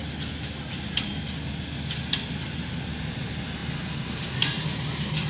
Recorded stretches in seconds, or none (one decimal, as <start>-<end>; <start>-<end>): 0.0-5.3